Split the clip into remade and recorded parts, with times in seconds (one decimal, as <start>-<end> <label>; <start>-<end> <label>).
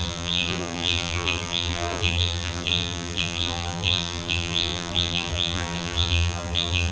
0.0-6.9 remade